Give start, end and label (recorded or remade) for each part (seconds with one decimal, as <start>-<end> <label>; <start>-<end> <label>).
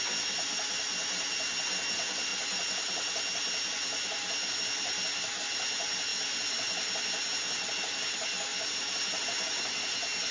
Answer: 0.0-10.3 recorded